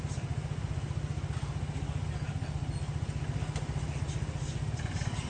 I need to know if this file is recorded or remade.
recorded